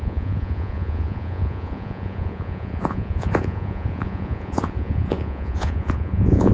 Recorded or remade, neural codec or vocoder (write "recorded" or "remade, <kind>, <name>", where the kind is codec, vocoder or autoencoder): remade, vocoder, Vocos